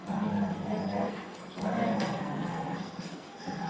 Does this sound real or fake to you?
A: fake